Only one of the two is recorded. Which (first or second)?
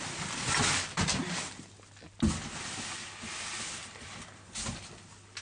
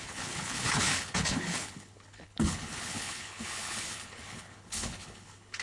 first